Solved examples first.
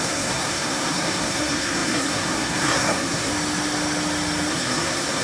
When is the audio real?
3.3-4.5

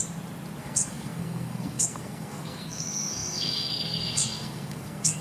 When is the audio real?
0.0-0.6

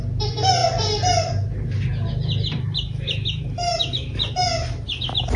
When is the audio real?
0.0-5.4

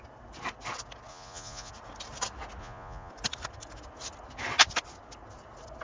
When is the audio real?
0.0-1.1; 1.7-2.6; 3.1-5.8

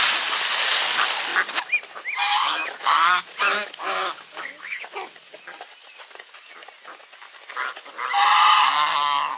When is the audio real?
0.0-2.3; 5.3-9.4